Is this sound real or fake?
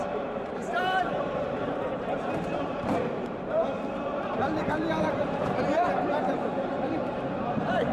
fake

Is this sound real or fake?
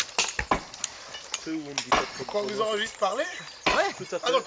real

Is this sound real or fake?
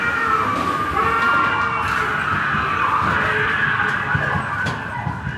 real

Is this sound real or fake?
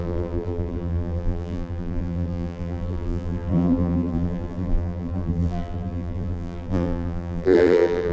fake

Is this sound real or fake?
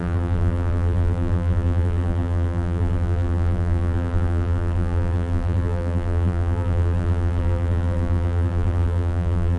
fake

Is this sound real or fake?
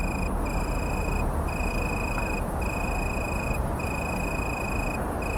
real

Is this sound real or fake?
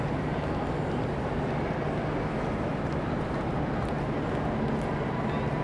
real